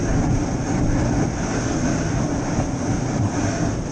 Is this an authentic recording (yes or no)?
yes